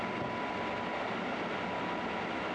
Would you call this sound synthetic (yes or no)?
no